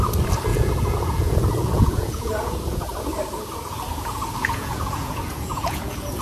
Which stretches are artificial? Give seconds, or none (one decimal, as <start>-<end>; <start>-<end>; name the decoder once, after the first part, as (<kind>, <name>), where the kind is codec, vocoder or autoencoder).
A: 0.5-2.5 (vocoder, Vocos); 4.4-6.2